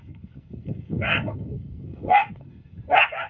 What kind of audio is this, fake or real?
fake